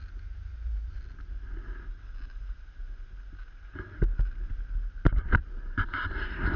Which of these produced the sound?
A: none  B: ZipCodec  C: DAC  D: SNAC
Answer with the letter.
A